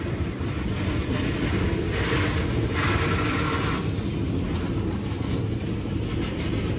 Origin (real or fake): real